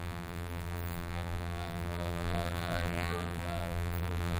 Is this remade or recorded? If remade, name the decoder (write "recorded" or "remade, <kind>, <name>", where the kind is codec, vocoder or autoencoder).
remade, vocoder, BigVGAN v2